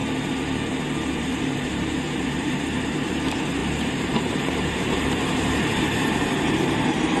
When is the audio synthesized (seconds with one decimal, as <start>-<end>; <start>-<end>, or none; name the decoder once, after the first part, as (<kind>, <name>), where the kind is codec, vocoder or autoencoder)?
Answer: 1.1-7.2 (vocoder, BigVGAN v2)